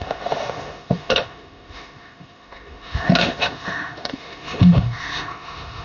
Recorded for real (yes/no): no